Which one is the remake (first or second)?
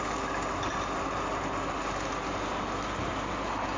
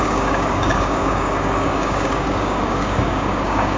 second